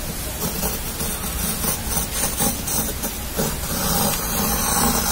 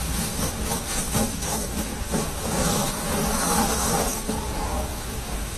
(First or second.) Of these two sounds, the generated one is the second